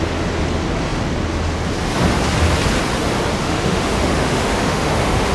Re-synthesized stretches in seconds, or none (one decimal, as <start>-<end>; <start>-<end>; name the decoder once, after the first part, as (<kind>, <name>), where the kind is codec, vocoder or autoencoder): 3.4-5.3 (autoencoder, DAC-VAE)